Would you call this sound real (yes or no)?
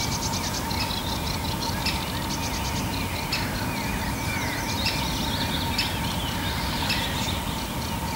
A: yes